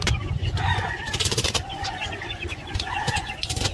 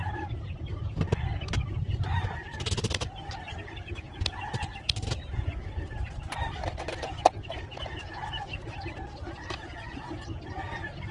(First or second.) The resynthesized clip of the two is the first